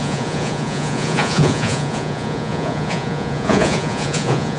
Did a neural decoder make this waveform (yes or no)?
yes